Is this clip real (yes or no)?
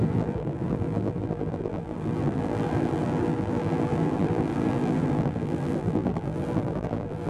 no